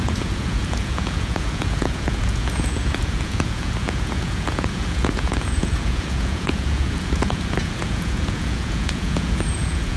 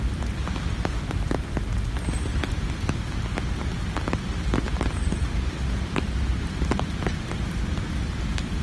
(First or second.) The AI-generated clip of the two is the first